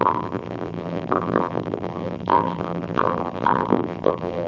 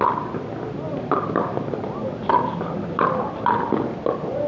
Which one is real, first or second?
second